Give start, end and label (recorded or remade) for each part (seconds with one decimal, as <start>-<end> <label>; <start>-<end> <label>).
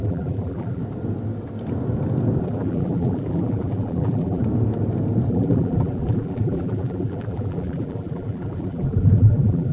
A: 0.0-0.8 remade; 0.8-2.4 recorded; 2.4-4.4 remade; 4.4-5.3 recorded; 5.3-9.7 remade